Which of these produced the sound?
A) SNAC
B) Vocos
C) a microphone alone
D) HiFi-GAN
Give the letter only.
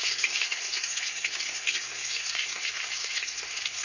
A